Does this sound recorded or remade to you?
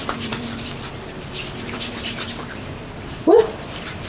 remade